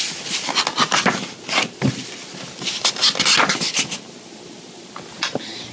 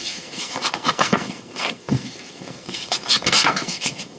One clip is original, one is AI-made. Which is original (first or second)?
first